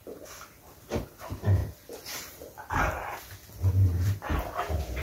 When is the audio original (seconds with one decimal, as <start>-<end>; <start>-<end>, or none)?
0.0-1.6; 3.2-5.0